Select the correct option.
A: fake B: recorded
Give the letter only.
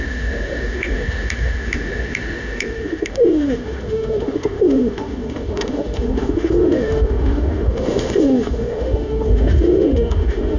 A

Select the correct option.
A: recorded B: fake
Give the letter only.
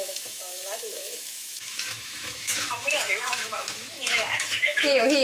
B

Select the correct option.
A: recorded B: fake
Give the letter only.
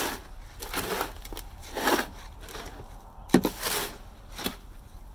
A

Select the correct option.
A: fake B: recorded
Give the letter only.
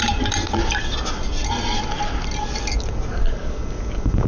B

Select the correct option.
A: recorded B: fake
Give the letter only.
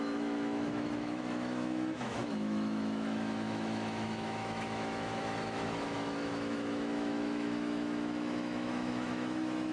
B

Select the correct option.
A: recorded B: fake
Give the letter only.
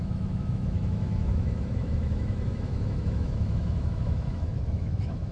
B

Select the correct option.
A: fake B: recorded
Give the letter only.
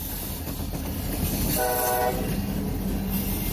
B